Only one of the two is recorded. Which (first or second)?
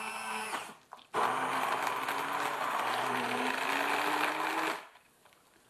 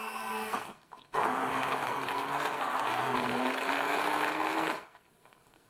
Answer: first